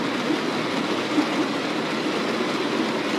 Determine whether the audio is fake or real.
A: real